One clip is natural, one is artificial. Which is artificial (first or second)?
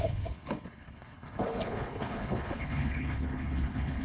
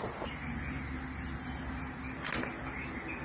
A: first